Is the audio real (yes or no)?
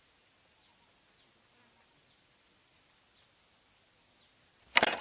yes